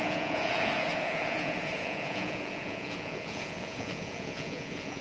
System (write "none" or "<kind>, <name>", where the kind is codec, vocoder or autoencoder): vocoder, Vocos